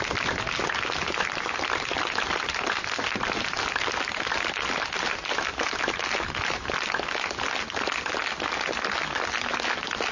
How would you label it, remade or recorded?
recorded